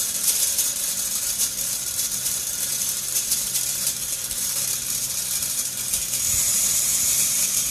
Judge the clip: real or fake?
fake